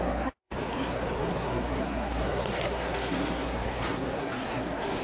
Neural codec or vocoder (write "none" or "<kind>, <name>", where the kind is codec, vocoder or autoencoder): codec, SNAC